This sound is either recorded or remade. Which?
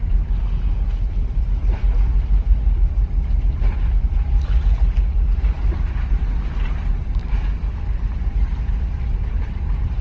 remade